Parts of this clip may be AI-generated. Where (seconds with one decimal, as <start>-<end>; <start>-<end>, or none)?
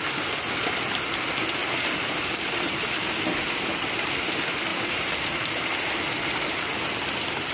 1.6-3.1; 4.7-5.7